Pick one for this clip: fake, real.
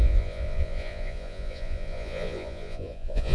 fake